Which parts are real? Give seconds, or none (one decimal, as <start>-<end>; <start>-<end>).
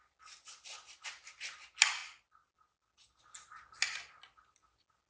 0.0-5.1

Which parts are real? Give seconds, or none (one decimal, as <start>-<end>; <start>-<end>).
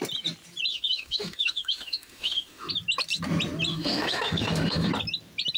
0.0-0.7; 2.7-3.7; 4.9-5.6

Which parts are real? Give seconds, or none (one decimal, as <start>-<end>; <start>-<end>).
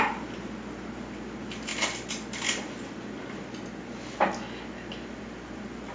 0.0-5.9